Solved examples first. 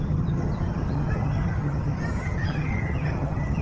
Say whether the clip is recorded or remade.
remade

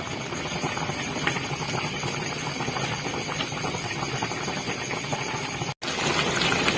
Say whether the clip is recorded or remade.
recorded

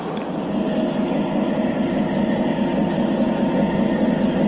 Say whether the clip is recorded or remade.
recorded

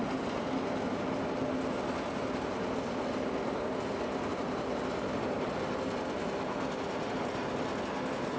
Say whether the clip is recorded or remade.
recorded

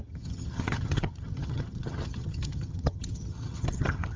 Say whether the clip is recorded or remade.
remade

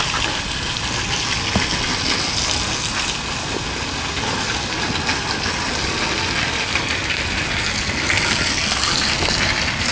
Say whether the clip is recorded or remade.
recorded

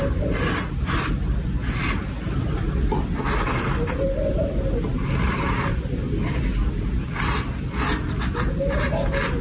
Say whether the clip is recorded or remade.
recorded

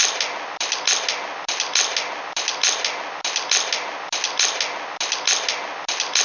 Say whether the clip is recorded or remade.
recorded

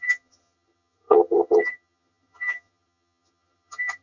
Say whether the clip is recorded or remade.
remade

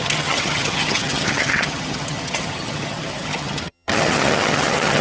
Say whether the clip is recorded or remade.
remade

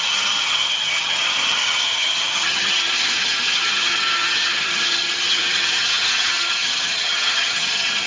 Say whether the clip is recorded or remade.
remade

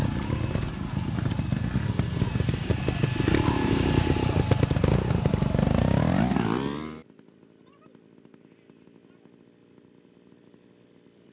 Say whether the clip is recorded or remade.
recorded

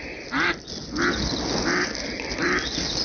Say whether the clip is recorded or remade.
recorded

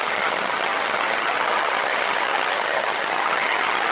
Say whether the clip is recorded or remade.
remade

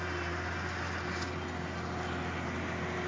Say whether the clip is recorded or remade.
recorded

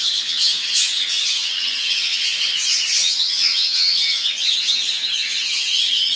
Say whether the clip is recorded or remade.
remade